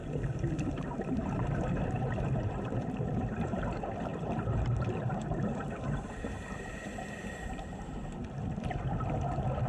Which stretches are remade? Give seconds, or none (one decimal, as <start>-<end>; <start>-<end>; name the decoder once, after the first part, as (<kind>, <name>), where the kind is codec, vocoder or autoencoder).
0.7-8.0 (vocoder, BigVGAN v2)